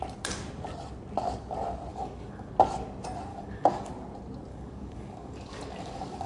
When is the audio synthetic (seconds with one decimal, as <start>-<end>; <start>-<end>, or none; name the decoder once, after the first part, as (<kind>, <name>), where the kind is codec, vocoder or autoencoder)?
1.9-2.5 (codec, DAC); 3.3-3.9; 4.5-6.3